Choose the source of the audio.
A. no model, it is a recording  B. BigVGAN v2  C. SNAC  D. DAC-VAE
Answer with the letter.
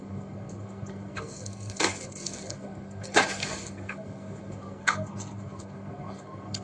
C